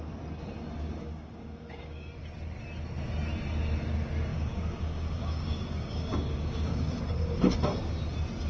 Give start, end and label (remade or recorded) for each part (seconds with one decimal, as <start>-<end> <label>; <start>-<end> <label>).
0.0-0.8 recorded; 0.8-2.1 remade; 2.1-4.3 recorded; 4.3-7.0 remade; 7.0-8.5 recorded